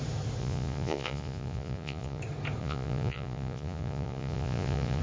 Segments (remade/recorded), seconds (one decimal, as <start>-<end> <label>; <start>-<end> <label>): 0.0-0.4 recorded; 0.4-2.2 remade; 2.2-2.6 recorded; 2.6-5.0 remade